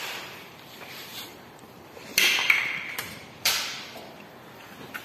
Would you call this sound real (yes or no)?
no